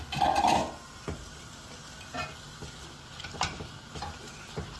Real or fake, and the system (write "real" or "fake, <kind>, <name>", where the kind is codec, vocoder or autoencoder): real